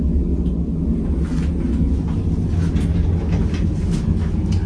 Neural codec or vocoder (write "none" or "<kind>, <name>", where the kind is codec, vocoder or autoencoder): none